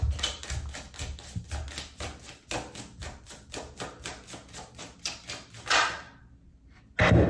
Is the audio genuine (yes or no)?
yes